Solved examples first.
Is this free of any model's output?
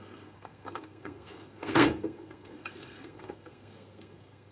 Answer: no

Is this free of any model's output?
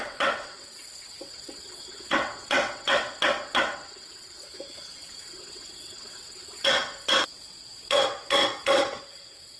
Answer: no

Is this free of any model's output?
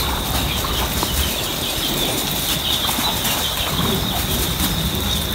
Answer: yes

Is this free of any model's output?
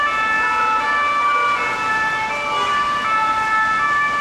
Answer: yes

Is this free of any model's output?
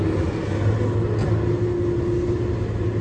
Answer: yes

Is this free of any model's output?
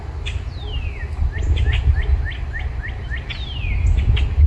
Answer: yes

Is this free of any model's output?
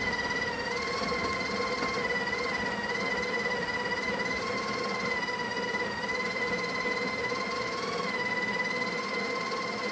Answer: yes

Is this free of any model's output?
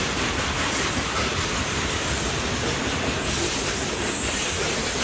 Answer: no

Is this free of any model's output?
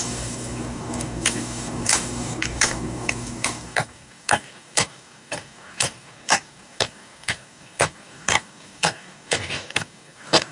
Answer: no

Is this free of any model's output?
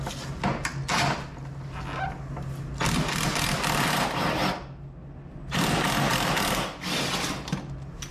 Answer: yes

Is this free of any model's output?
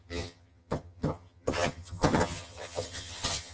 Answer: no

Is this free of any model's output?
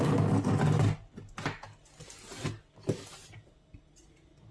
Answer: yes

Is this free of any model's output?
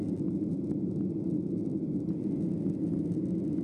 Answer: yes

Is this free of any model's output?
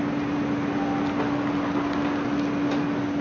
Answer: yes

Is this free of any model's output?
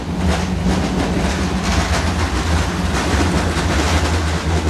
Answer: yes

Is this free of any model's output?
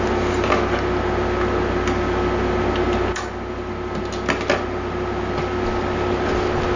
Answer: yes